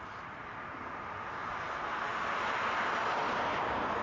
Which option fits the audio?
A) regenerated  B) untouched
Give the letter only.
B